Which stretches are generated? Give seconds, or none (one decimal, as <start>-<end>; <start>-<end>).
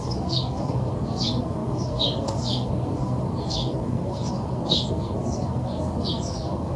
0.0-6.8